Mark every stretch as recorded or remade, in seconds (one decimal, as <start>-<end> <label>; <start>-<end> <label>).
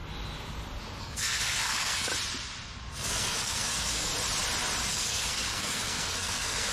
0.0-1.0 recorded; 1.0-2.1 remade; 2.1-2.9 recorded; 2.9-4.1 remade; 4.1-4.9 recorded; 4.9-6.7 remade